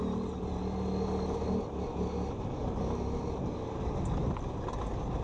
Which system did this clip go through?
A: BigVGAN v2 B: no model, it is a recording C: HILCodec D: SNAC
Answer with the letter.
B